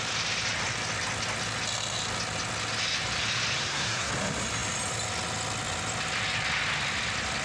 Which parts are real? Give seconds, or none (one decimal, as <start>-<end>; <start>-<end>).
0.0-3.6; 4.1-7.4